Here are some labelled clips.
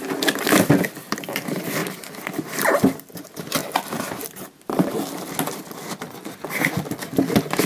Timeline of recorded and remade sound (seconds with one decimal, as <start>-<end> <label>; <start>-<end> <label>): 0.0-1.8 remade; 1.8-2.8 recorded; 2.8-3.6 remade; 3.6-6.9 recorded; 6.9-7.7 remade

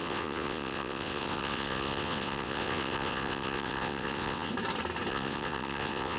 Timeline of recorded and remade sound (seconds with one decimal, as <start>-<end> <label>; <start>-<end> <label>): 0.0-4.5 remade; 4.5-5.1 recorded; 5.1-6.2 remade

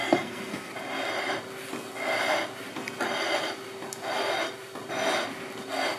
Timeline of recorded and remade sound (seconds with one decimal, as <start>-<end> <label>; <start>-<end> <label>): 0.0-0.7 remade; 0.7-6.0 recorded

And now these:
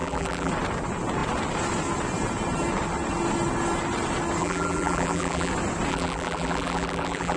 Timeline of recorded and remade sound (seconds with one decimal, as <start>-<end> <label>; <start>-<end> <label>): 0.0-0.5 remade; 0.5-4.4 recorded; 4.4-5.5 remade; 5.5-5.9 recorded; 5.9-7.4 remade

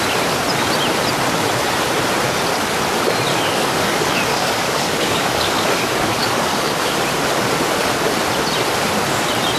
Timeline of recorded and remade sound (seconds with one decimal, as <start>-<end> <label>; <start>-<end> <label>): 0.0-3.3 recorded; 3.3-6.8 remade; 6.8-9.6 recorded

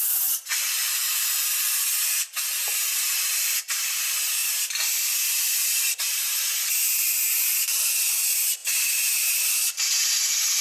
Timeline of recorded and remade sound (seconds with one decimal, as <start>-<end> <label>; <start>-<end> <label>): 0.0-4.4 recorded; 4.4-7.1 remade; 7.1-10.6 recorded

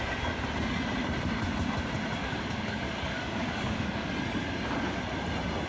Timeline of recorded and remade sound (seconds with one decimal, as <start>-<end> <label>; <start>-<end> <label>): 0.0-2.2 recorded; 2.2-4.1 remade; 4.1-5.7 recorded

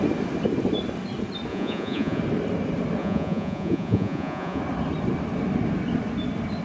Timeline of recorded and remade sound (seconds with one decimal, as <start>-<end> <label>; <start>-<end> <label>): 0.0-1.5 recorded; 1.5-2.2 remade; 2.2-3.0 recorded; 3.0-4.6 remade; 4.6-6.6 recorded